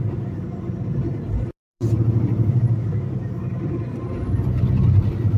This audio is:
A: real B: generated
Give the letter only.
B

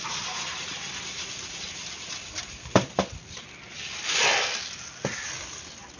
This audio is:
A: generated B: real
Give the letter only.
B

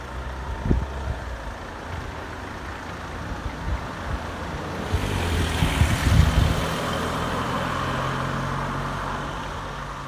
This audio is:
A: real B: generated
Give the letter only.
A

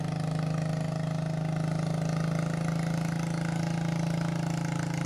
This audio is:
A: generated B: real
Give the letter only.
B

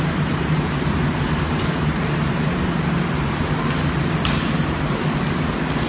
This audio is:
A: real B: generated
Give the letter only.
B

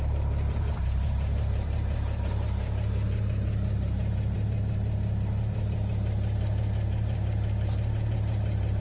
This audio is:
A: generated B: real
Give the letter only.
A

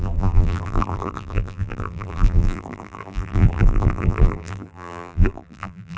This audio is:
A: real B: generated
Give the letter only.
B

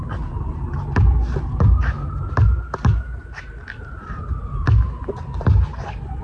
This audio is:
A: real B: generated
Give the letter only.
A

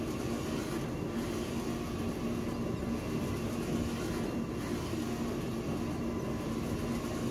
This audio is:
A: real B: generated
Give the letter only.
A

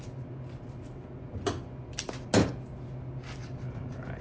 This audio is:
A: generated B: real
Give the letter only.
B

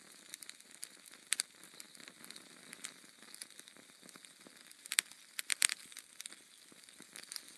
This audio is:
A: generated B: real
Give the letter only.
B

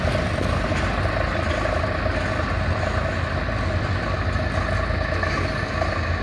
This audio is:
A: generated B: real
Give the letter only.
B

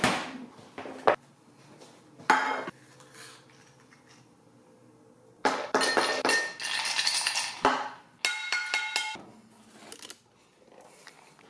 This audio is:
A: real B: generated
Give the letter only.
A